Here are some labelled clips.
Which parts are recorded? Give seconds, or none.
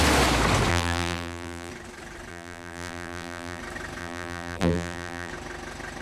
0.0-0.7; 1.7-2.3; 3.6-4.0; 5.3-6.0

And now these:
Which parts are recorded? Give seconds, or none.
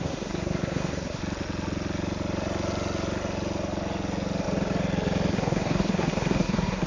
1.2-5.3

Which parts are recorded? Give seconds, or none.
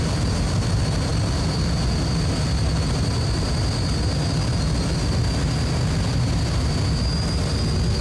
0.0-8.0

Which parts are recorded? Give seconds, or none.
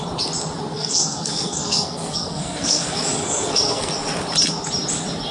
0.0-0.7; 3.9-5.3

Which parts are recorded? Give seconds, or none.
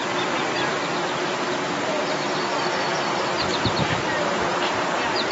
0.0-5.3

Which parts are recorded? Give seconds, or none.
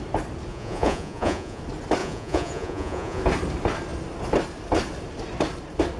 0.0-0.5; 1.6-2.0; 3.2-6.0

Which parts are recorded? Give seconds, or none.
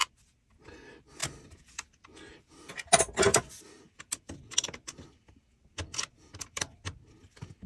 0.0-7.7